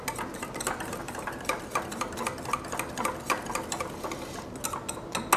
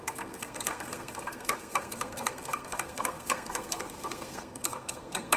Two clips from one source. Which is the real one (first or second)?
first